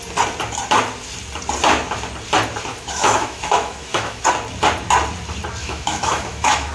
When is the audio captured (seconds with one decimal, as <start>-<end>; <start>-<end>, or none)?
0.0-2.7; 4.2-5.6